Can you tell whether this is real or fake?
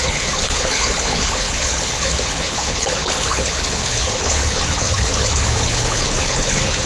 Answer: fake